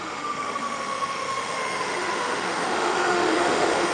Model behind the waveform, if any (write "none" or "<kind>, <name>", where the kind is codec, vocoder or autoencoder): autoencoder, DAC-VAE